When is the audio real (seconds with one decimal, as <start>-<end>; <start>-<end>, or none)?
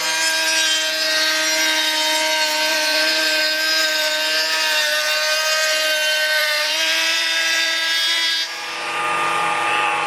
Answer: 0.0-2.7; 3.4-6.4